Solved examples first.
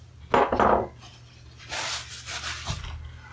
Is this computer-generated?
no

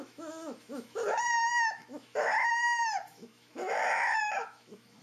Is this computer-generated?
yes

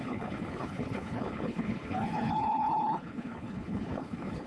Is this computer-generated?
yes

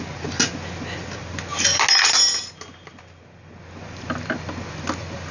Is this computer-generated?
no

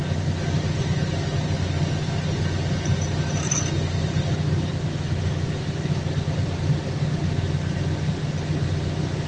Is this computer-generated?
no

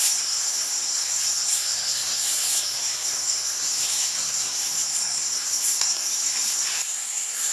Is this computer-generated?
yes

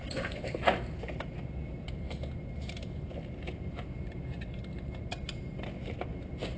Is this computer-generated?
no